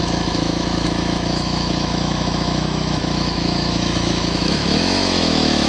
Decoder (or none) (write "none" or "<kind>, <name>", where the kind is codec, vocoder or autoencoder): autoencoder, DAC-VAE